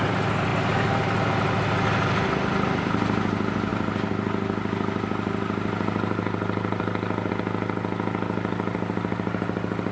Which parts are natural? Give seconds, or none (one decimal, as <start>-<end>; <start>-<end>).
0.0-9.9